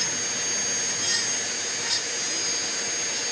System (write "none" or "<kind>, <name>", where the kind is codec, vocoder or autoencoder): none